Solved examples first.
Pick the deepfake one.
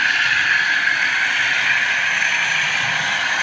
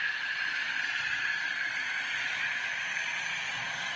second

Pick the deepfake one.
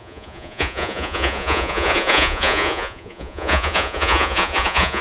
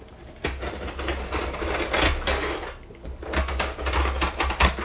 first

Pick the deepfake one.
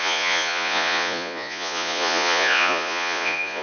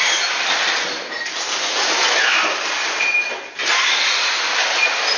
first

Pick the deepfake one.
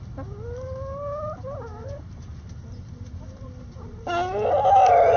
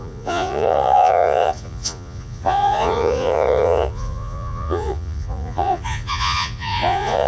second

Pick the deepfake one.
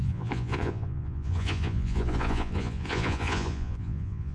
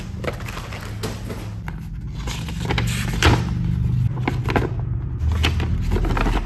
first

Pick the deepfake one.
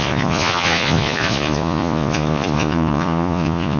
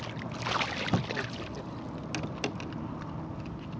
first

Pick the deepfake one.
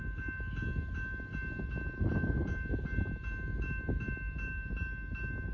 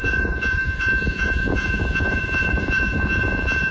second